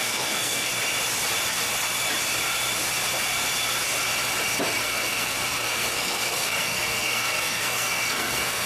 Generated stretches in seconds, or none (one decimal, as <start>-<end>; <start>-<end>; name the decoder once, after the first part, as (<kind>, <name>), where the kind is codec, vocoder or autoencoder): 0.0-0.7 (codec, SNAC); 4.8-8.7